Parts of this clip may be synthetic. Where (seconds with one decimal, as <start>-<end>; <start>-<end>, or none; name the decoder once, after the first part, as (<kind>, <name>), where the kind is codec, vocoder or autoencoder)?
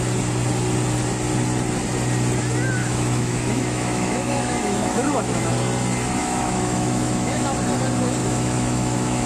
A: 2.8-5.5 (autoencoder, DAC-VAE); 6.2-7.5; 8.2-9.3